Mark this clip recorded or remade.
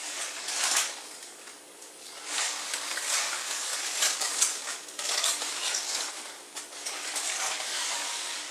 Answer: remade